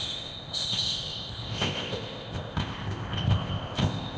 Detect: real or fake fake